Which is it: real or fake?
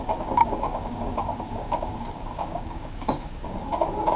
fake